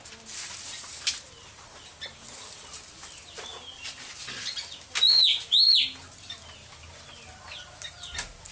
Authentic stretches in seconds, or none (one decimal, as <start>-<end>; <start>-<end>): 0.0-8.5